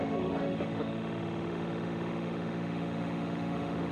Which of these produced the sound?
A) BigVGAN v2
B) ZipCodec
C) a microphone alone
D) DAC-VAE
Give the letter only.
D